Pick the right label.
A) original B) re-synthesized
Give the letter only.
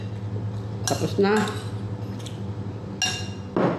A